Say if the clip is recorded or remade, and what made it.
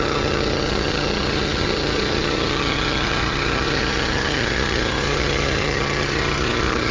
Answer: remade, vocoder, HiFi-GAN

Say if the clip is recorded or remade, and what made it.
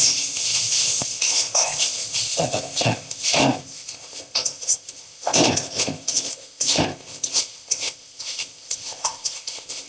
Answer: remade, codec, ZipCodec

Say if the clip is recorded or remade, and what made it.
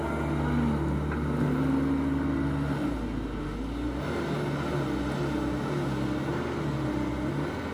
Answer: recorded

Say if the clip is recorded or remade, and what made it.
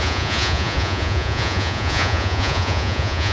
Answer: remade, vocoder, Vocos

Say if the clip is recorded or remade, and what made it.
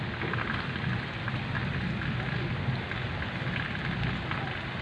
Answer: recorded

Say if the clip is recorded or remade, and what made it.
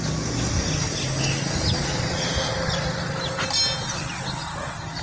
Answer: recorded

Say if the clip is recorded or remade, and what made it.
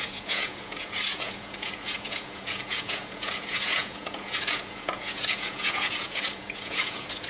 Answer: remade, vocoder, Vocos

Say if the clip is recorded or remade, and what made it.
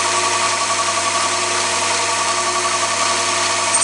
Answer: recorded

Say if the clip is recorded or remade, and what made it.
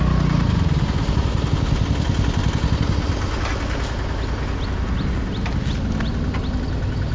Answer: recorded